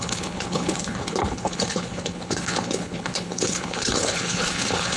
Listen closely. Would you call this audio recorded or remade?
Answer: remade